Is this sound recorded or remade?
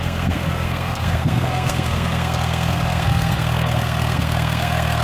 remade